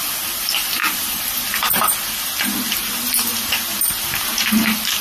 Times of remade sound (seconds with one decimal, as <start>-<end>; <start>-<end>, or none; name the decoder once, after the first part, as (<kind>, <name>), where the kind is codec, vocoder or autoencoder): none

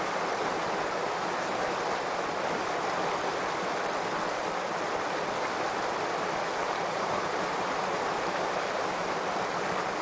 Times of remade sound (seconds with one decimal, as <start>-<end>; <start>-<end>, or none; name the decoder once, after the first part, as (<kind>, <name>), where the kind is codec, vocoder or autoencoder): 6.6-9.2 (vocoder, BigVGAN v2)